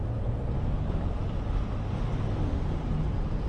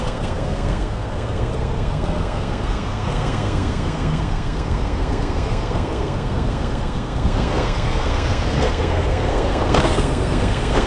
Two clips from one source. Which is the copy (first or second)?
second